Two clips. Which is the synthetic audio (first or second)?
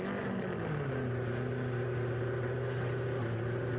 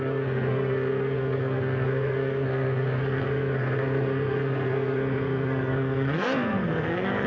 second